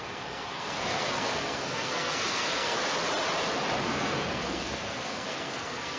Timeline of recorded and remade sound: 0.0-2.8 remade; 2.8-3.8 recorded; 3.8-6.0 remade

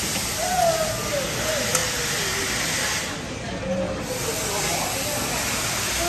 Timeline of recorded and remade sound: 0.0-6.1 recorded

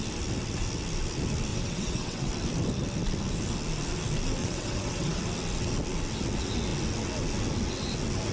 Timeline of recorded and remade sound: 0.0-1.5 recorded; 1.5-2.3 remade; 2.3-4.4 recorded; 4.4-5.2 remade; 5.2-8.3 recorded

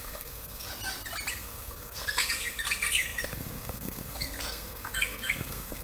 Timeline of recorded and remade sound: 0.0-0.7 remade; 0.7-1.3 recorded; 1.3-5.8 remade

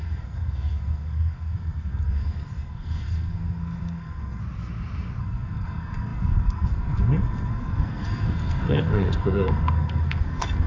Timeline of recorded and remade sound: 0.0-4.4 remade; 4.4-5.2 recorded; 5.2-10.7 remade

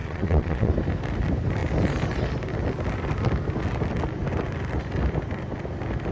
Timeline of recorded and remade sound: 0.0-0.7 remade; 0.7-6.1 recorded

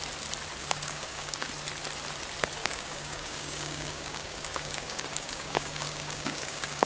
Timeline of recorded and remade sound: 0.0-0.6 recorded; 0.6-1.5 remade; 1.5-2.6 recorded; 2.6-6.9 remade